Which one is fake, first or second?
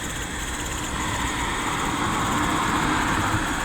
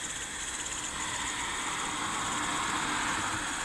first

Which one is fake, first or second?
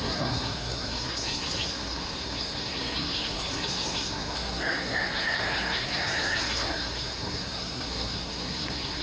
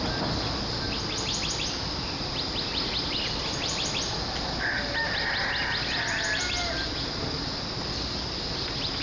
first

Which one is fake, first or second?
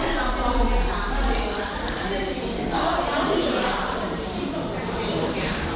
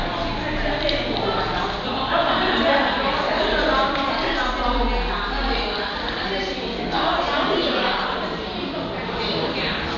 first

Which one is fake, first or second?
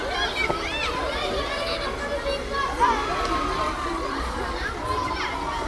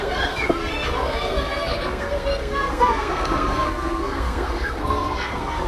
second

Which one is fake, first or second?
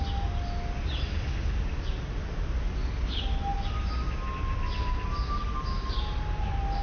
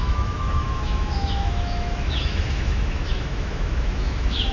second